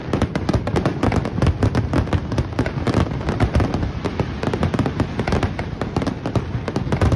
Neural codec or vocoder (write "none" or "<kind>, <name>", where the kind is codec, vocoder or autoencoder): none